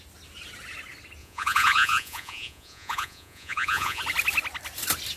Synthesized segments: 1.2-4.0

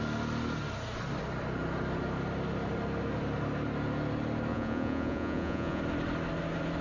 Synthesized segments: 4.5-5.8

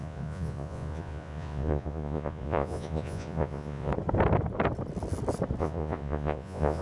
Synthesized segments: 0.0-3.9; 5.6-6.8

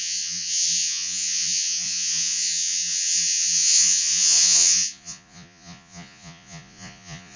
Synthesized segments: 0.0-7.4

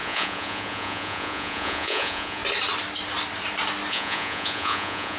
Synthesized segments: 0.0-2.4; 3.9-5.2

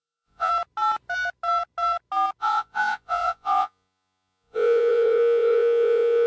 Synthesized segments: 0.0-0.5; 2.4-6.3